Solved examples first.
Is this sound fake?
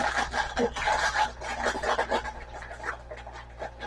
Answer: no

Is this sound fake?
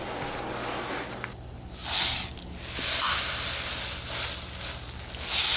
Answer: no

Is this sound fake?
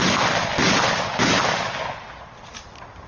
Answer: no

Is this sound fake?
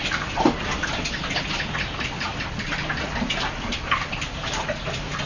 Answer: no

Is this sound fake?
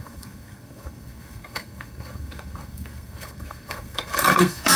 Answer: yes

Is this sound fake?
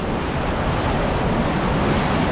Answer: no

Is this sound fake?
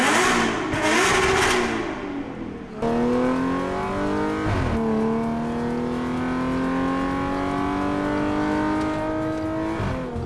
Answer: no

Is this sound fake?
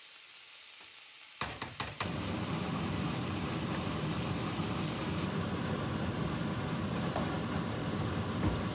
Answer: no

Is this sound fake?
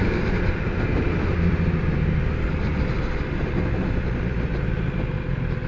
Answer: no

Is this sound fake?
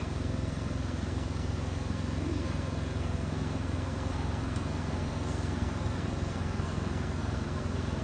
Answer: yes